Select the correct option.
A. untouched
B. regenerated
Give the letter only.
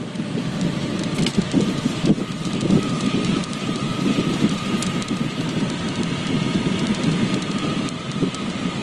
B